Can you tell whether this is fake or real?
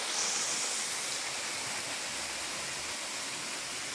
real